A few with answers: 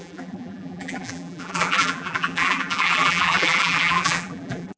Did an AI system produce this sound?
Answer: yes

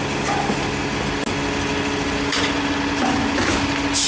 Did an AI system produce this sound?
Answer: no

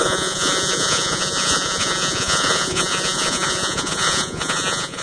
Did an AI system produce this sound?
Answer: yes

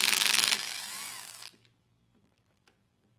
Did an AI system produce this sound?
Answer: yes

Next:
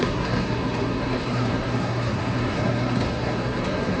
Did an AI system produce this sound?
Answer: yes